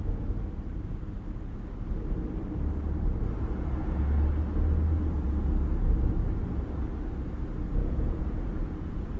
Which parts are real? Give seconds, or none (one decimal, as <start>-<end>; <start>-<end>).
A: 0.0-7.8